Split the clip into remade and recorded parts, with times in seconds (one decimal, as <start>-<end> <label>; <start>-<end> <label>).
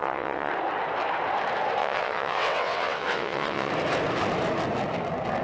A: 0.0-0.5 remade; 0.5-1.8 recorded; 1.8-3.7 remade; 3.7-5.4 recorded